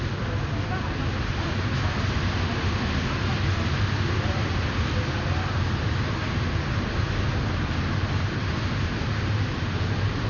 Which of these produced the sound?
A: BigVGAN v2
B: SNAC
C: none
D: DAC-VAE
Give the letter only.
C